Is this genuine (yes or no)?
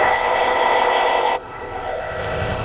no